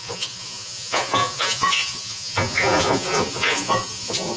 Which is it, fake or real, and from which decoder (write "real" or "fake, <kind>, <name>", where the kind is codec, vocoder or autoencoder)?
fake, vocoder, Vocos